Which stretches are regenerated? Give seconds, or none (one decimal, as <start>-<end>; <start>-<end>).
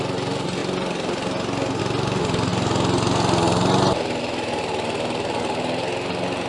none